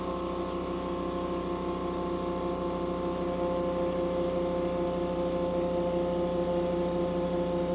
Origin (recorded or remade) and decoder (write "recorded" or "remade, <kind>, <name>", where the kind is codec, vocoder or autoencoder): recorded